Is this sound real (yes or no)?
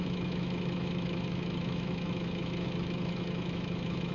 no